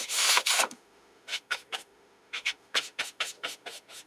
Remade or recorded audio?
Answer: remade